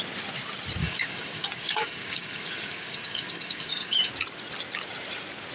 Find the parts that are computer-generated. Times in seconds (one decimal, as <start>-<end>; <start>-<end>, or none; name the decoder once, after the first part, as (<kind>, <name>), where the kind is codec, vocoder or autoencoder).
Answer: 0.8-4.1 (codec, DAC)